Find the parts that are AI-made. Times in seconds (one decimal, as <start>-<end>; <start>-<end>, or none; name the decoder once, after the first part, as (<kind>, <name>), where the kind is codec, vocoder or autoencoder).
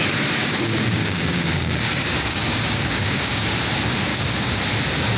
0.4-3.5 (codec, DAC); 4.1-4.6